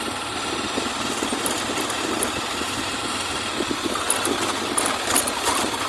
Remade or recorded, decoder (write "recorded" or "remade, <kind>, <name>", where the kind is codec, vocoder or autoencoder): recorded